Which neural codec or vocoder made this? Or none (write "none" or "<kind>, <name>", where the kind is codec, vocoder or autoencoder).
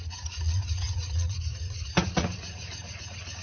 vocoder, Vocos